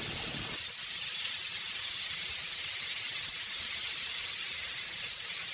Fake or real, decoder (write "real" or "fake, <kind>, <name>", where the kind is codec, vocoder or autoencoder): real